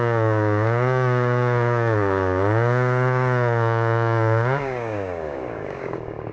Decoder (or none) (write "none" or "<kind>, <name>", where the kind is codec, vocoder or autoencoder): codec, DAC